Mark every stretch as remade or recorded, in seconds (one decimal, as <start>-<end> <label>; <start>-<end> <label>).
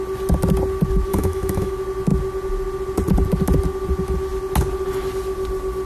0.0-1.1 recorded; 1.1-1.7 remade; 1.7-5.9 recorded